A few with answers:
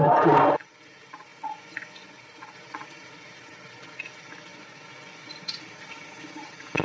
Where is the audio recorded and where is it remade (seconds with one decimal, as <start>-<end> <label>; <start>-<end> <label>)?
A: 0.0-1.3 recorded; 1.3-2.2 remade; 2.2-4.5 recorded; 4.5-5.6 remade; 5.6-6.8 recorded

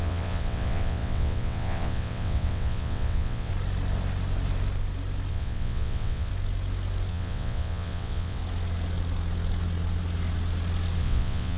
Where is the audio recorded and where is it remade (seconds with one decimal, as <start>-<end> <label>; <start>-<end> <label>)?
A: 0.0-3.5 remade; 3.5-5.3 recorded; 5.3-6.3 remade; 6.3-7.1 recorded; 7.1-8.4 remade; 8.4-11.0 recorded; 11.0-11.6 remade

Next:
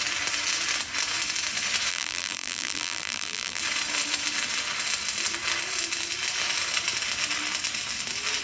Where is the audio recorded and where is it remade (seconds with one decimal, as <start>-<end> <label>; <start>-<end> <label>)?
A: 0.0-1.9 recorded; 1.9-3.6 remade; 3.6-8.4 recorded

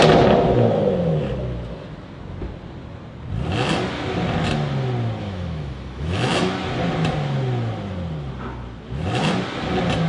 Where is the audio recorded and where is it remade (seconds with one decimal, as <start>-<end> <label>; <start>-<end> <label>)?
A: 0.0-5.2 recorded; 5.2-6.3 remade; 6.3-10.1 recorded

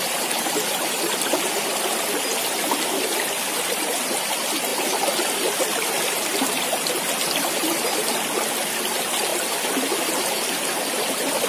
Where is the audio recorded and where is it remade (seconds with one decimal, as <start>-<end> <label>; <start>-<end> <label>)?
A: 0.0-4.7 recorded; 4.7-6.9 remade; 6.9-9.3 recorded; 9.3-10.0 remade; 10.0-11.5 recorded